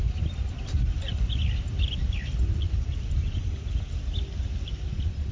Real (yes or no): yes